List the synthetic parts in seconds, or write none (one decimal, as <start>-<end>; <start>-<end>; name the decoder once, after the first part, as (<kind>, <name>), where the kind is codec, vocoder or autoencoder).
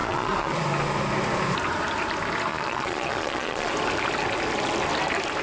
0.0-0.6 (vocoder, Vocos); 2.5-3.7